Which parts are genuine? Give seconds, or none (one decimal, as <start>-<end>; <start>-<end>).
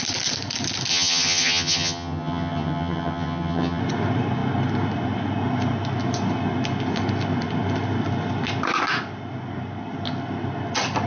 0.0-0.9; 3.8-11.1